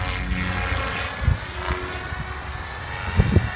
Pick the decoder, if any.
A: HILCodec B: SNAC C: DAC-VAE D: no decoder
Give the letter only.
D